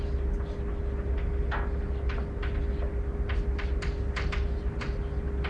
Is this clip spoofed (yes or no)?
no